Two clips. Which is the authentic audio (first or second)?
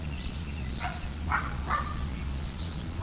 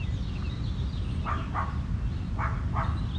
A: second